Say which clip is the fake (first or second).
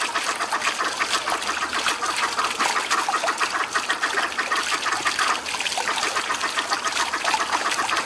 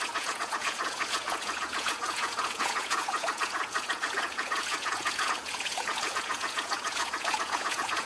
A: second